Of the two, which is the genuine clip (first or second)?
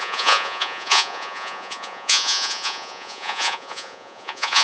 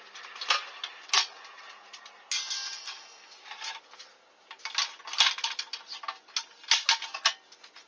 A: second